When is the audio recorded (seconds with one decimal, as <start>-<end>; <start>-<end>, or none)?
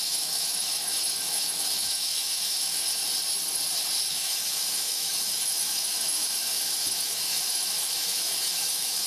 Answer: 3.0-4.1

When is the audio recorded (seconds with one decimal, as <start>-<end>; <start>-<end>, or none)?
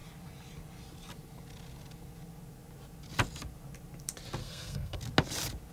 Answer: 0.0-4.4; 5.0-5.7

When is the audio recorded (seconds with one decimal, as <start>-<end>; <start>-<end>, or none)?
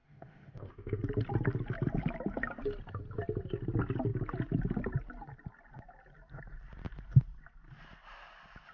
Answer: 1.0-8.7